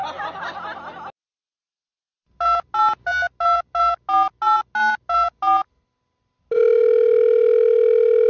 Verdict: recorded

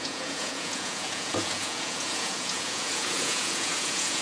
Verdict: remade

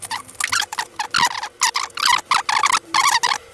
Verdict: recorded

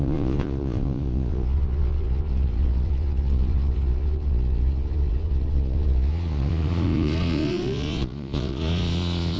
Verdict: remade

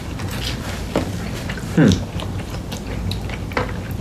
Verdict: recorded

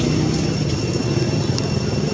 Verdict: recorded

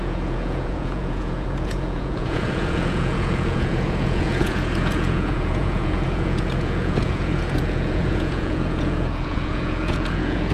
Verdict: remade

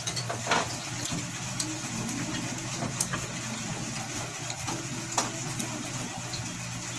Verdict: recorded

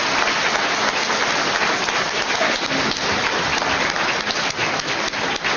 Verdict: recorded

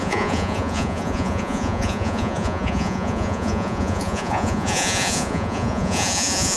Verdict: remade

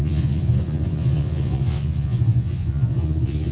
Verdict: remade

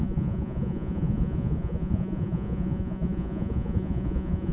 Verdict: remade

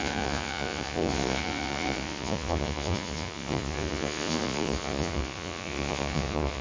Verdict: remade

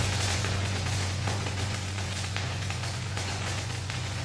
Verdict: remade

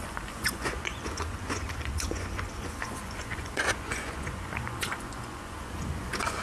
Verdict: remade